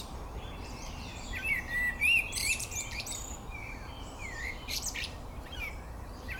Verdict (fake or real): fake